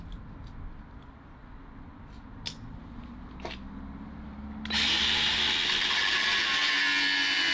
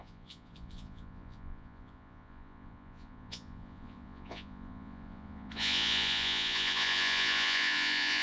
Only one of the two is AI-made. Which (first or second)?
second